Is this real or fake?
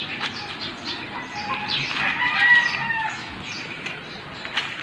real